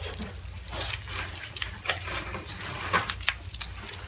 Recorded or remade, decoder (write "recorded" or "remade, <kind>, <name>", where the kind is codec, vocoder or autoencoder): recorded